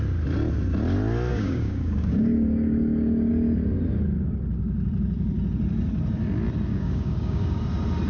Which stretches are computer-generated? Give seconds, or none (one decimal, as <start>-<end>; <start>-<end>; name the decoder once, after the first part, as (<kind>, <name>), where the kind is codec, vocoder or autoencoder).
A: 1.3-3.3 (codec, DAC); 6.7-7.6